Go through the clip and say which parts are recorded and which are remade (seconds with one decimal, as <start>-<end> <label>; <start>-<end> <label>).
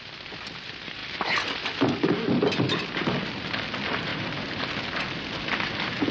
0.0-4.1 recorded; 4.1-4.7 remade; 4.7-6.1 recorded